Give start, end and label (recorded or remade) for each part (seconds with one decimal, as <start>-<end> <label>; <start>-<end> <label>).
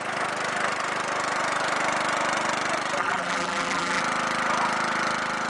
0.0-3.0 recorded; 3.0-4.0 remade; 4.0-5.5 recorded